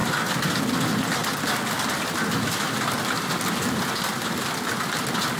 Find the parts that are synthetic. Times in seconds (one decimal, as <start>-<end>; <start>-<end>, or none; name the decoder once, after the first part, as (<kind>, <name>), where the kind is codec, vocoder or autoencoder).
0.0-0.6 (vocoder, BigVGAN v2); 1.2-4.4

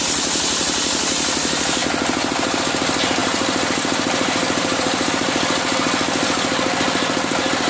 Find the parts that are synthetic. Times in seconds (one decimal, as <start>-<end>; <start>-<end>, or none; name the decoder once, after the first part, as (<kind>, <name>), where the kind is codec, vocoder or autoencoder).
3.2-5.1 (vocoder, BigVGAN v2)